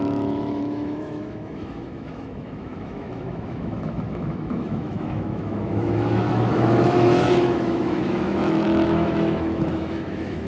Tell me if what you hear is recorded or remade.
remade